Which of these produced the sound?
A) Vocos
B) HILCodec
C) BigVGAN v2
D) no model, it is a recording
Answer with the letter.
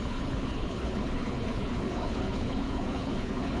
B